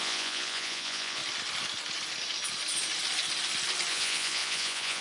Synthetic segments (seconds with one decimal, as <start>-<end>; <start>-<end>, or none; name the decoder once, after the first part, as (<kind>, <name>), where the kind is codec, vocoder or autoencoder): 0.0-1.2 (vocoder, Vocos); 3.9-5.0